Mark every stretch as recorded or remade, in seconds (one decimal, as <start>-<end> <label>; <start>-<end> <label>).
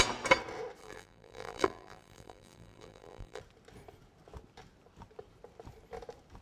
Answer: 0.0-0.8 recorded; 0.8-3.4 remade; 3.4-6.4 recorded